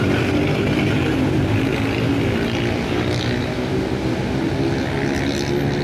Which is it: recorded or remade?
recorded